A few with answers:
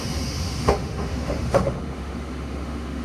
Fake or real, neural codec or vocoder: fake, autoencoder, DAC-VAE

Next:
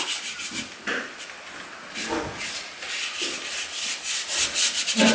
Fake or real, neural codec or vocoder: real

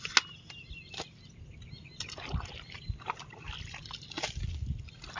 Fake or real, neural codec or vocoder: real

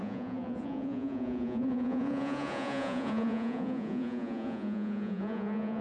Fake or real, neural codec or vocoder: fake, vocoder, Vocos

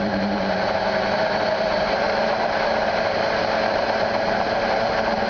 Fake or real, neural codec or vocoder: fake, vocoder, BigVGAN v2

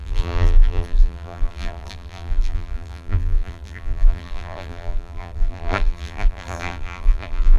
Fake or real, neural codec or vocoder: fake, vocoder, BigVGAN v2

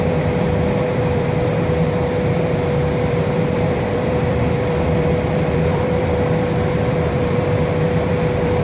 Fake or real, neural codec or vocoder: fake, vocoder, BigVGAN v2